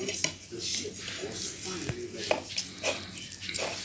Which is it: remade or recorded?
recorded